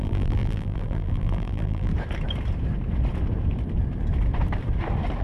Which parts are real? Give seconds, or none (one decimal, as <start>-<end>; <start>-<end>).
1.9-5.2